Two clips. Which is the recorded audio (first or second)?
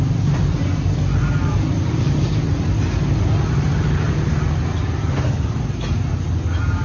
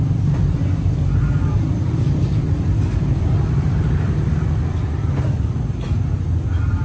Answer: first